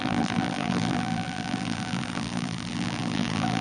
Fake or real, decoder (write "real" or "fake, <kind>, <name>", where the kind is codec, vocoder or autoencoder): fake, vocoder, BigVGAN v2